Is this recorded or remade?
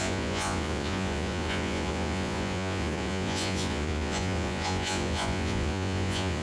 remade